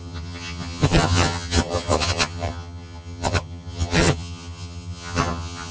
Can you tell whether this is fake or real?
fake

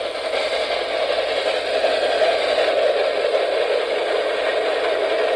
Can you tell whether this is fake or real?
real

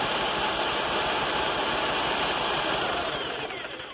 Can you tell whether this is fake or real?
fake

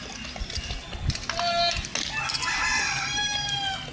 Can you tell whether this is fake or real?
real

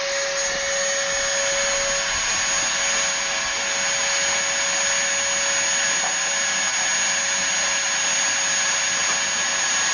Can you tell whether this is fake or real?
real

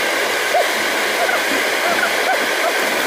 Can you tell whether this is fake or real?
fake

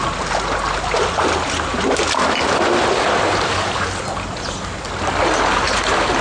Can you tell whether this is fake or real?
real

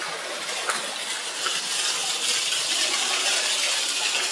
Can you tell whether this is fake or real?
real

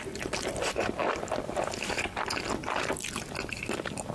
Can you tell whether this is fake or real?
real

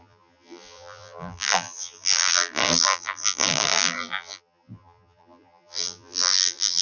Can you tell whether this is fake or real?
fake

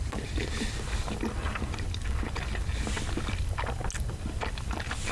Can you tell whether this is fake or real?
real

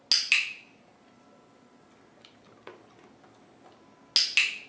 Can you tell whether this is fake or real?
real